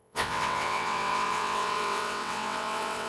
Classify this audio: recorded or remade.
remade